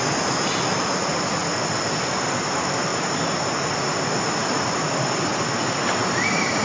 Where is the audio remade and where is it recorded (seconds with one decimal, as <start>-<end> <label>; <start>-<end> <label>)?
0.0-1.4 remade; 1.4-1.9 recorded; 1.9-2.9 remade; 2.9-3.7 recorded; 3.7-5.3 remade; 5.3-6.0 recorded; 6.0-6.6 remade